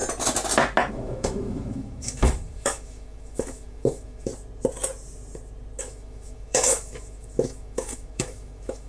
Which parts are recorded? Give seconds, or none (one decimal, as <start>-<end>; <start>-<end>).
0.0-0.9; 4.3-5.8